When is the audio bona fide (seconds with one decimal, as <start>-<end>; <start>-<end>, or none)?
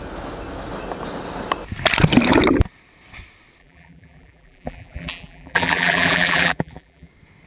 0.0-3.6; 7.1-7.5